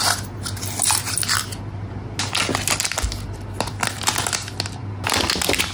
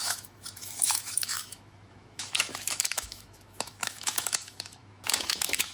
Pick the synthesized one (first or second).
second